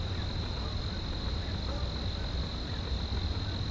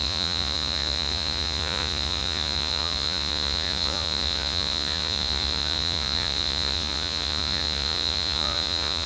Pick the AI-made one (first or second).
second